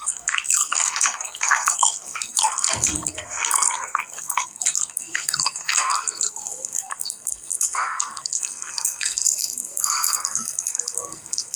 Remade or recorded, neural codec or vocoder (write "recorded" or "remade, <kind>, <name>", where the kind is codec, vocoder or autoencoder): remade, codec, SNAC